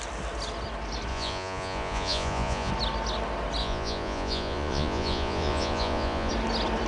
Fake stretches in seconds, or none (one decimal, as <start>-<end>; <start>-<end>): 1.1-2.7; 3.6-6.3